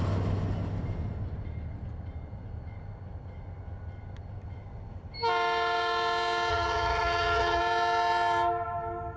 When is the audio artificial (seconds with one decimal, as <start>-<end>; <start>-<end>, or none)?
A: 6.5-7.6